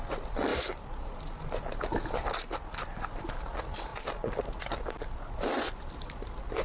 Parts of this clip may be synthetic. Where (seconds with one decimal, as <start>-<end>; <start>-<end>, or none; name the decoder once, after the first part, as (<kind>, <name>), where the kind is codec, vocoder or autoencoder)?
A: none

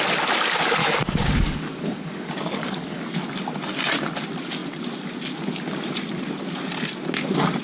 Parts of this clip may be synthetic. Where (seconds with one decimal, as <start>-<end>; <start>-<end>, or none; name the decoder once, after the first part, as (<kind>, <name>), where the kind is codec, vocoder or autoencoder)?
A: 0.8-3.0 (codec, DAC)